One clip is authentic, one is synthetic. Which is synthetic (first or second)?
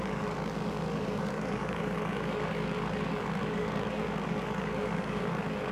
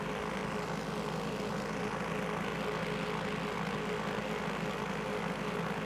first